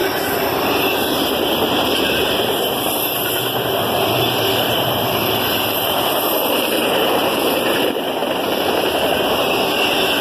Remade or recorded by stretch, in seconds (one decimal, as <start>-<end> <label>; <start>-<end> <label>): 0.0-3.6 recorded; 3.6-8.2 remade; 8.2-10.2 recorded